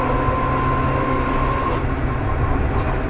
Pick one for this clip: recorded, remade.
recorded